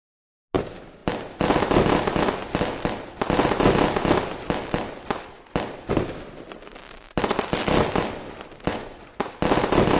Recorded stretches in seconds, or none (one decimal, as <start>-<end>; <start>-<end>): 0.0-8.7; 9.3-10.0